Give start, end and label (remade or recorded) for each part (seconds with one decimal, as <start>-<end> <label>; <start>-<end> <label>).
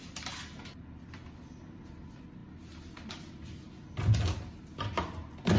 0.0-5.6 recorded